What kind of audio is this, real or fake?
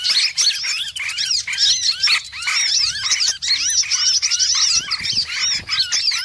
real